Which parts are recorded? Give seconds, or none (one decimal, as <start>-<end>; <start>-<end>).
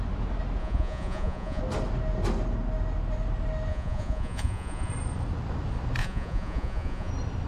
0.0-0.6; 1.6-3.7; 4.9-6.0; 7.1-7.5